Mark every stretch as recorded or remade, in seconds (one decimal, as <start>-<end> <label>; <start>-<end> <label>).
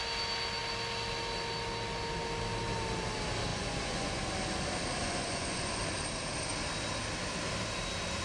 0.0-3.5 recorded; 3.5-4.2 remade; 4.2-5.0 recorded; 5.0-5.8 remade; 5.8-8.2 recorded